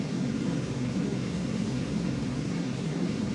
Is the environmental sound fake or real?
fake